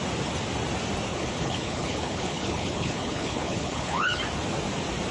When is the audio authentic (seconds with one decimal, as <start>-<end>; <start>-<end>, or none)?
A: 0.0-1.1; 4.2-5.1